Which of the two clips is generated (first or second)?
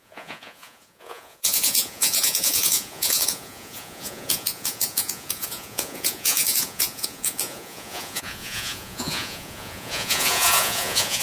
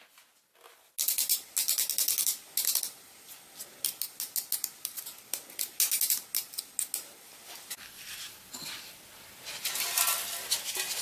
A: first